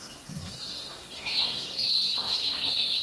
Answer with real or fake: fake